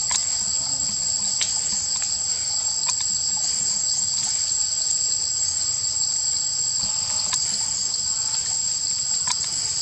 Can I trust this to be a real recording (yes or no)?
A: yes